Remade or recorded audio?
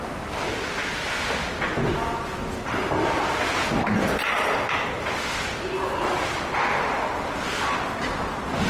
recorded